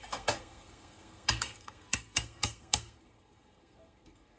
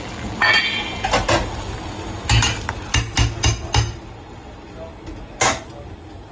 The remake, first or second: first